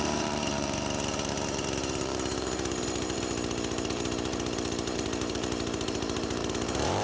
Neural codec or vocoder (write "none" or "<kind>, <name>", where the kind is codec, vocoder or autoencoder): vocoder, BigVGAN v2